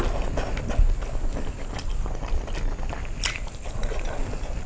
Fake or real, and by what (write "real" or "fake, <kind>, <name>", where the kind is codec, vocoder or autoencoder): real